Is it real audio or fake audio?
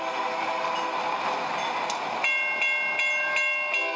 real